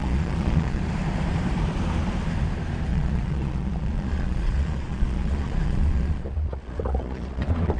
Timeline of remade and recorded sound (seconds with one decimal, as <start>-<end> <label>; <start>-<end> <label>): 0.0-0.8 remade; 0.8-2.9 recorded; 2.9-7.8 remade